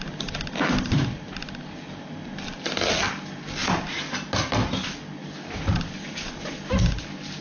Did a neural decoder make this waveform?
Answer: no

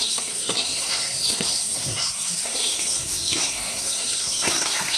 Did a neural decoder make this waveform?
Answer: yes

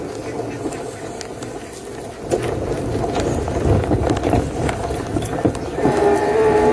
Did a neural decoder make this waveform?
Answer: no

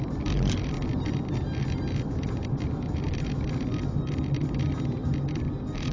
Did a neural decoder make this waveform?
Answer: no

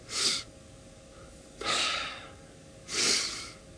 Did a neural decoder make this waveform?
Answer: yes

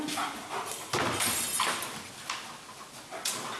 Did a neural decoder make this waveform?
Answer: no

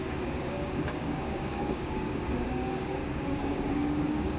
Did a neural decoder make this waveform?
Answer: yes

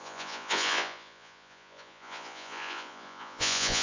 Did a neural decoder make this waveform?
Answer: yes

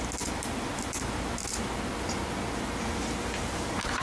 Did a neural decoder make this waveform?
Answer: no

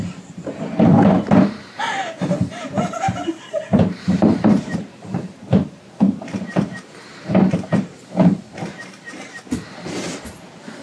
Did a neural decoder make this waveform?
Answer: yes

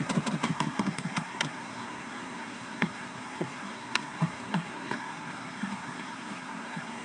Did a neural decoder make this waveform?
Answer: yes